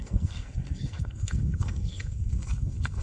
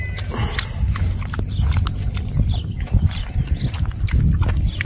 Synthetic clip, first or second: first